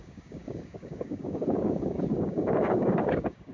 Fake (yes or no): yes